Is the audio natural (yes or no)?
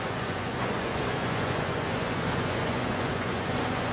no